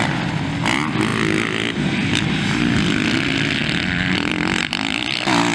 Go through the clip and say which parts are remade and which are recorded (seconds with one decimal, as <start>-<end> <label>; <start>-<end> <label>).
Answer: 0.0-5.5 recorded

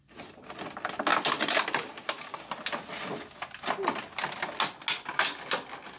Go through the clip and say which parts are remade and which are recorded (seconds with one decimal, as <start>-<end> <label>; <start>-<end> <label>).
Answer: 0.0-6.0 recorded

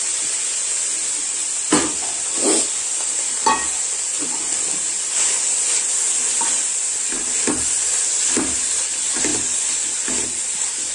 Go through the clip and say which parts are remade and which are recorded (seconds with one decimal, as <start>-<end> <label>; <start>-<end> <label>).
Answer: 0.0-10.9 recorded